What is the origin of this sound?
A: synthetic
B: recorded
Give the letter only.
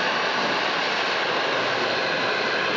B